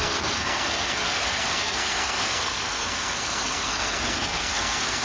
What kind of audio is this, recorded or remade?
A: remade